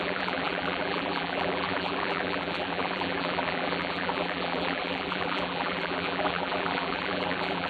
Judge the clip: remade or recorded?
remade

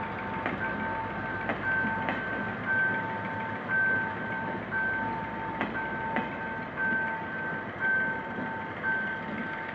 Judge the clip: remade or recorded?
recorded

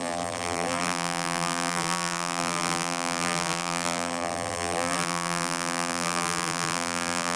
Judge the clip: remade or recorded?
remade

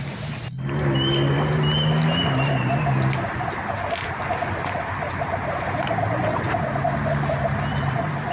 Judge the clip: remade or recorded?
recorded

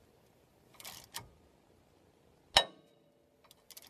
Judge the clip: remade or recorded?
recorded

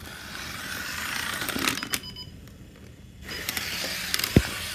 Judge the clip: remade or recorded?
remade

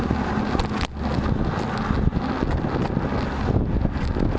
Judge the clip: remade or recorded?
recorded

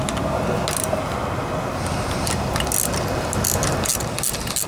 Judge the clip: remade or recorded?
recorded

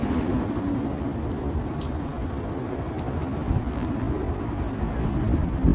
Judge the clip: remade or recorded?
recorded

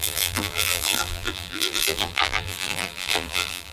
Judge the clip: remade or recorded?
remade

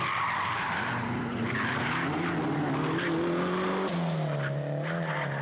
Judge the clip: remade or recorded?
recorded